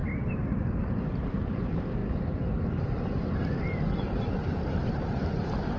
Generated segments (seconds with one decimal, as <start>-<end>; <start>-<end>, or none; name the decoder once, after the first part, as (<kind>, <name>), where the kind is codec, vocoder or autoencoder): 0.0-2.0 (vocoder, BigVGAN v2); 3.6-5.8